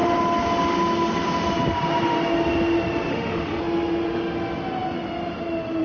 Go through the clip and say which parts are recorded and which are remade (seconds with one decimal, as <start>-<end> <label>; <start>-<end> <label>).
0.0-3.1 recorded; 3.1-3.6 remade; 3.6-5.8 recorded